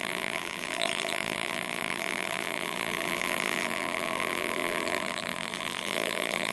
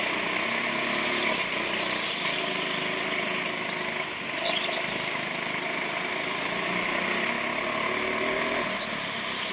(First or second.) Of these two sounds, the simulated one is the first